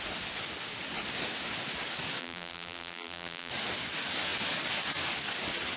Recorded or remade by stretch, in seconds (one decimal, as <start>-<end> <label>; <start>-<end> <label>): 0.0-2.2 recorded; 2.2-3.5 remade; 3.5-5.8 recorded